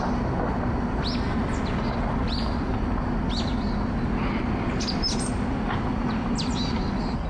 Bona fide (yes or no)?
yes